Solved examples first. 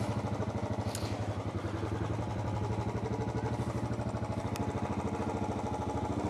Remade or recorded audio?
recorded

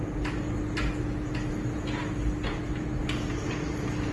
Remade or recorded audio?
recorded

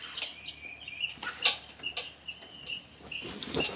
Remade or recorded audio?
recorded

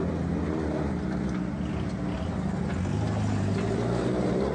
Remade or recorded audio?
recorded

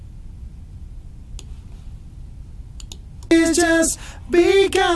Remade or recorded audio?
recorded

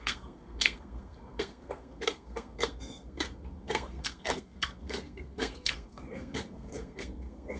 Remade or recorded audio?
remade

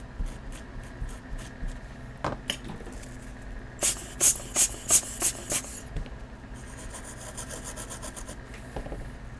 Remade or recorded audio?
recorded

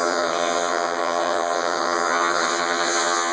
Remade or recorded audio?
remade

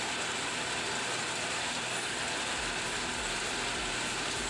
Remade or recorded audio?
recorded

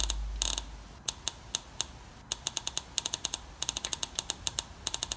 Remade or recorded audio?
recorded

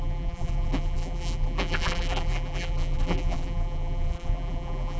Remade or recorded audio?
remade